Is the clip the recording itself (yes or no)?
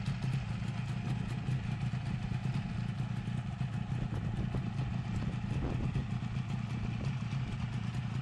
yes